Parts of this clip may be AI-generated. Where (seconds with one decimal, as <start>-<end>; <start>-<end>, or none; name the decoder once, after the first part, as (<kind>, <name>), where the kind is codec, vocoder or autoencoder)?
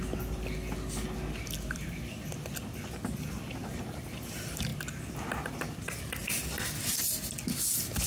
none